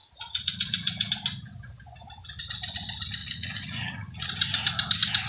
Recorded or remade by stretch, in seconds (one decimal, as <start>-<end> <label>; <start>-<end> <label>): 0.0-1.1 remade; 1.1-3.2 recorded; 3.2-4.3 remade; 4.3-5.3 recorded